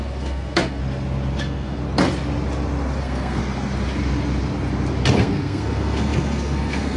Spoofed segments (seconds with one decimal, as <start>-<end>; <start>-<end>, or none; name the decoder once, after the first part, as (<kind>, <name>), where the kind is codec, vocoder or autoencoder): 0.0-0.8 (codec, SNAC); 1.4-1.8; 3.0-3.4; 5.2-7.0